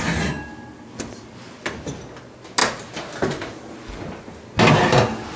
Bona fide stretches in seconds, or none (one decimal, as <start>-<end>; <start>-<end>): 0.0-5.4